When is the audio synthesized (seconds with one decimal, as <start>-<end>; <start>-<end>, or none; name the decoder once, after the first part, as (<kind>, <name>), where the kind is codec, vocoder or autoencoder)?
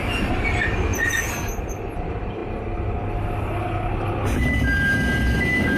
none